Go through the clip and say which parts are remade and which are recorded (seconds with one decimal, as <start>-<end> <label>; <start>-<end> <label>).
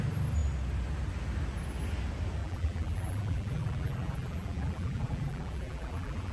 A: 0.0-2.4 recorded; 2.4-6.3 remade